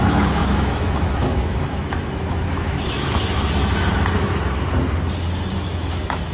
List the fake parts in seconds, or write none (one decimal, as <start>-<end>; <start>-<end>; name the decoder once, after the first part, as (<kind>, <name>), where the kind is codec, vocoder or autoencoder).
0.0-3.6 (autoencoder, DAC-VAE); 5.5-6.3